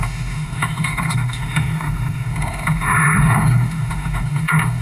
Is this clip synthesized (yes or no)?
yes